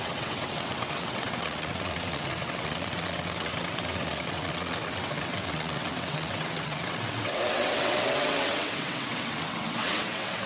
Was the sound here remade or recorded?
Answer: remade